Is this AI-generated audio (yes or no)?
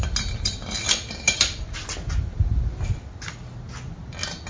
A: no